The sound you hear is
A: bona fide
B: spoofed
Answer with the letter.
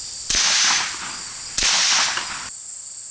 A